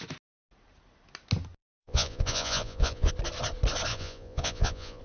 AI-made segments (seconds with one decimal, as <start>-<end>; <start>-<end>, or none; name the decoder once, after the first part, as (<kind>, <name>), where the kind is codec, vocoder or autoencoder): 1.6-3.1 (vocoder, Vocos); 3.9-5.0